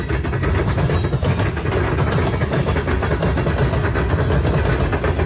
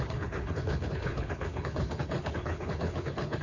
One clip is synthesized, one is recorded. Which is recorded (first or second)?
first